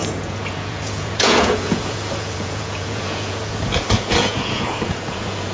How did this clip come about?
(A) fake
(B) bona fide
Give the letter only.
A